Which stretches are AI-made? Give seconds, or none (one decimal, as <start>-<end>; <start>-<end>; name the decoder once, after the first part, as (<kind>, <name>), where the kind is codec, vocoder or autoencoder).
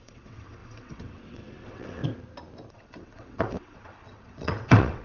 0.0-2.0 (vocoder, WaveNeXt); 2.7-5.0